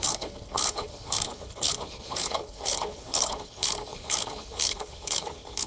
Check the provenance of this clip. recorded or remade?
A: remade